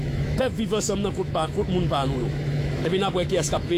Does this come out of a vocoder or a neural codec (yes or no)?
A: yes